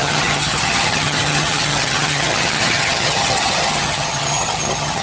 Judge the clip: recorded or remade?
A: remade